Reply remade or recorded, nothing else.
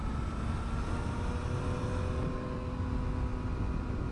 recorded